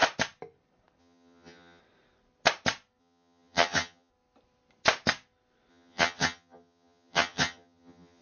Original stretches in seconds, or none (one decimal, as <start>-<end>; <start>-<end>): 0.0-1.0; 1.8-3.0; 4.1-5.7